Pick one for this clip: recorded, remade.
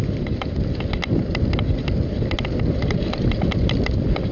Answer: recorded